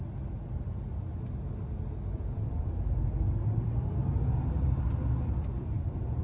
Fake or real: real